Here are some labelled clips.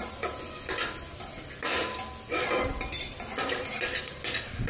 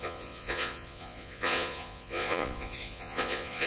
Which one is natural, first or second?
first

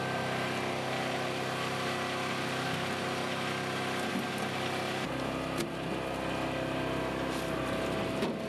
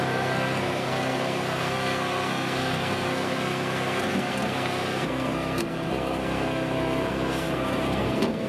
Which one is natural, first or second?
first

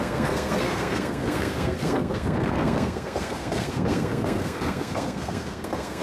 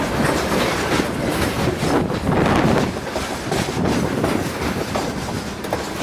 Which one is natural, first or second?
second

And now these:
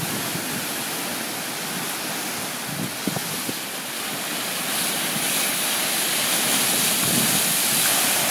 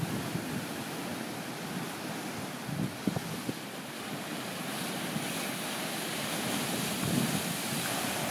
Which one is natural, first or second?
first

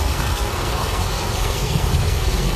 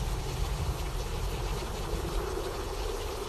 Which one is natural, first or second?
second